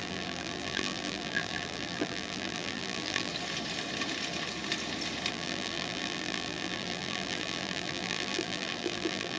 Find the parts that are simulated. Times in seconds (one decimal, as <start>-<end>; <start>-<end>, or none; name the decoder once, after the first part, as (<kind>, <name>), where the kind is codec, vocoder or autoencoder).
0.0-3.3 (vocoder, BigVGAN v2); 5.3-9.4